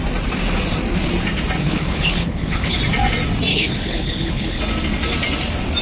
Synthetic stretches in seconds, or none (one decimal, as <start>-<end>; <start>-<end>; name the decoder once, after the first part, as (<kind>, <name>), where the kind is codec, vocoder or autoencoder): 1.6-2.8 (codec, HILCodec); 3.5-4.6